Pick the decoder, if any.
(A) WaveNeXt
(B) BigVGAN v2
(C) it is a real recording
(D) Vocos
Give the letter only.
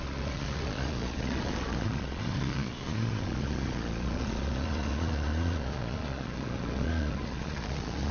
D